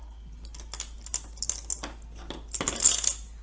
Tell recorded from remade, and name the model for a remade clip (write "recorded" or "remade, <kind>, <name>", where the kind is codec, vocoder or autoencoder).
recorded